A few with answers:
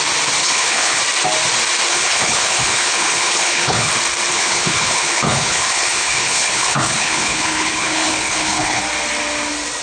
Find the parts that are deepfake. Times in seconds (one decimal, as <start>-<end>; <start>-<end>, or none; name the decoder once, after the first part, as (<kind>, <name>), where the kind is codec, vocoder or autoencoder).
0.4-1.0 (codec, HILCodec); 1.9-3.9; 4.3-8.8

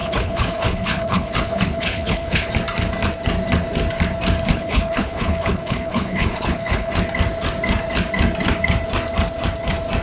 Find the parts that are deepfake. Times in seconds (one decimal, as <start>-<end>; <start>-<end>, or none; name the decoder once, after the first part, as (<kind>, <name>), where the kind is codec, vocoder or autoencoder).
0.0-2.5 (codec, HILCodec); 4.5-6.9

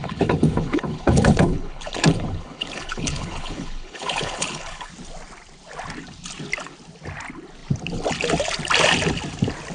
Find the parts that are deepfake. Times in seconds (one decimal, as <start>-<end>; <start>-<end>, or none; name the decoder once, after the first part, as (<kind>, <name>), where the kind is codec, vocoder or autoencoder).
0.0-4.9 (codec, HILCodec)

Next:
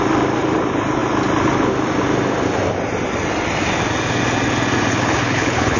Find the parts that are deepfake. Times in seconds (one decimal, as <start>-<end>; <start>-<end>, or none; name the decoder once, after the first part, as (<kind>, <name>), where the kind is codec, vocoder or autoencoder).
4.9-5.8 (codec, HILCodec)

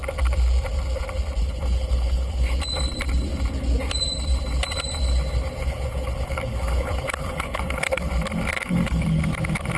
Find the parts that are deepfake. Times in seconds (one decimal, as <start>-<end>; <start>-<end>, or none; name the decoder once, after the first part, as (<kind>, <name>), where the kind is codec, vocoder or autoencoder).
1.4-2.6 (codec, HILCodec); 5.6-8.1; 8.5-9.2

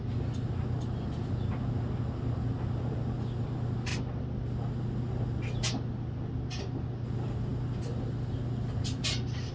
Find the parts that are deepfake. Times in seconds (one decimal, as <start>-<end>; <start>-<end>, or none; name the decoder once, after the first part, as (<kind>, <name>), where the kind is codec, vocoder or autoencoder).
none

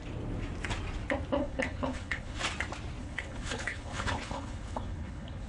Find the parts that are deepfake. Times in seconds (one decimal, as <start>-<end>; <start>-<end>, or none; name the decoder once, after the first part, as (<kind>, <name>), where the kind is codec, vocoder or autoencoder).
1.4-2.4 (codec, HILCodec); 3.0-5.5

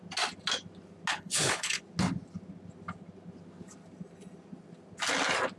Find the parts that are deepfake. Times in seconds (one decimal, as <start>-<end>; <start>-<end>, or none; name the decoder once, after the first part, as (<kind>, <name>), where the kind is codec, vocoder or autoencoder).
1.1-1.8 (codec, HILCodec)